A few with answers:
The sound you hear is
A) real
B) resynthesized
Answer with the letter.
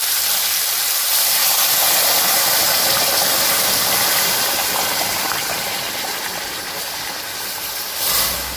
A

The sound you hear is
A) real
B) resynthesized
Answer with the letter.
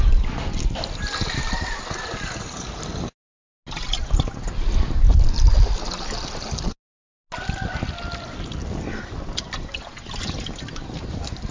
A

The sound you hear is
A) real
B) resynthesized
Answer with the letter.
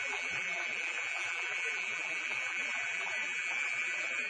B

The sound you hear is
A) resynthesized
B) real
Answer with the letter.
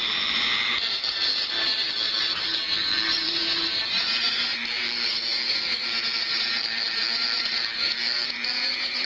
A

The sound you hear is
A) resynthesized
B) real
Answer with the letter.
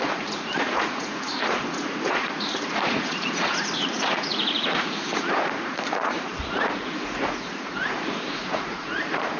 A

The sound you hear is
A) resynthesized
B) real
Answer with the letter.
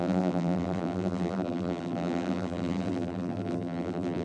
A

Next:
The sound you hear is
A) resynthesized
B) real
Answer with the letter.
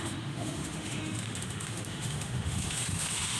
A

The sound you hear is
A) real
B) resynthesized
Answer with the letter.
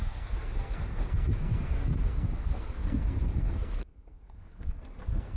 B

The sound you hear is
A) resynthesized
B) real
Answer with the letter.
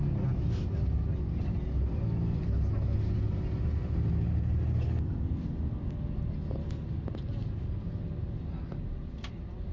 B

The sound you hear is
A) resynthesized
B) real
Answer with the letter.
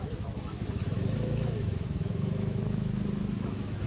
A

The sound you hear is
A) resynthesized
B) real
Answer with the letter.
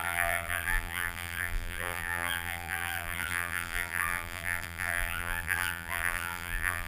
A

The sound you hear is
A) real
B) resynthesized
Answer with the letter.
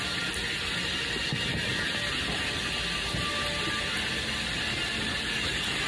A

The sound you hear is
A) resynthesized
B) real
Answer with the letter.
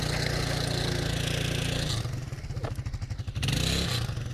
B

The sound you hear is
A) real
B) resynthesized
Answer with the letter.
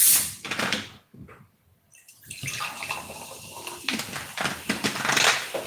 A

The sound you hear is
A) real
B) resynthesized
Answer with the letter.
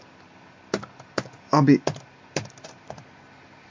A